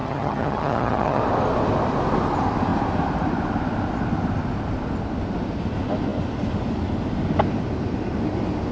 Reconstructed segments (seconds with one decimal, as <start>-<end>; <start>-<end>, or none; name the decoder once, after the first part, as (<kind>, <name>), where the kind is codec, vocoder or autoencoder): 0.0-1.2 (vocoder, HiFi-GAN)